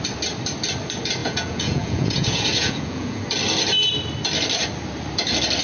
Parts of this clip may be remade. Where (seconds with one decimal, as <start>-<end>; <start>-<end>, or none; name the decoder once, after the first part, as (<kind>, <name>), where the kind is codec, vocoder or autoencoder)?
1.2-3.2 (vocoder, Vocos)

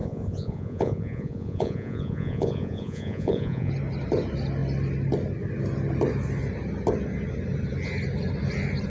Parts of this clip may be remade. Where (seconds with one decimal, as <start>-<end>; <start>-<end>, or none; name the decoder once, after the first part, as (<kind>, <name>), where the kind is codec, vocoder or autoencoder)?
0.0-3.7 (vocoder, Vocos)

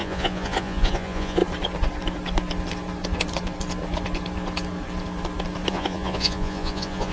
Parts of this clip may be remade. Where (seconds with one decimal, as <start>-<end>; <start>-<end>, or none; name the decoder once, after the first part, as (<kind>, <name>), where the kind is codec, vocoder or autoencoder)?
0.0-1.4 (vocoder, Vocos); 5.7-7.1

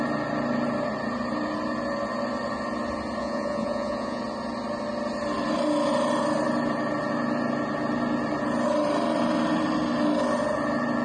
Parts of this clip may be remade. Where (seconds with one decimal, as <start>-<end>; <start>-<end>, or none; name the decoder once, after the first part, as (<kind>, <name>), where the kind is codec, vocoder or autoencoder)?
3.2-4.2 (vocoder, Vocos)

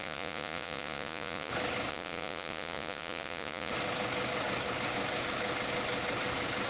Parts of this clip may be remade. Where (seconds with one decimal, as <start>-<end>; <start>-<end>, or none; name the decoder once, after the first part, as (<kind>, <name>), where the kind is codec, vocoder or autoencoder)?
0.0-1.5 (vocoder, Vocos); 1.9-3.7

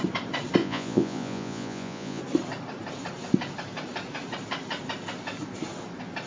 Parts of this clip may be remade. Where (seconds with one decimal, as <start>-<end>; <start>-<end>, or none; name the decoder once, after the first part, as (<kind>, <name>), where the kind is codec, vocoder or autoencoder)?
0.6-2.2 (vocoder, Vocos)

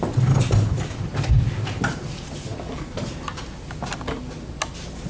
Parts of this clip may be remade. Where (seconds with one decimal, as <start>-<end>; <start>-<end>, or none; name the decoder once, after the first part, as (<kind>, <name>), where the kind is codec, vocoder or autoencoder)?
none